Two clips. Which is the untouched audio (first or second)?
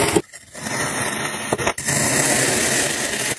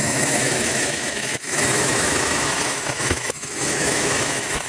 first